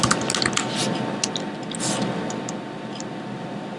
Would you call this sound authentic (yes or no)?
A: yes